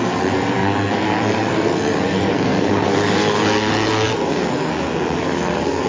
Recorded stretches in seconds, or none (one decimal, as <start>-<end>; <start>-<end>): 4.7-5.2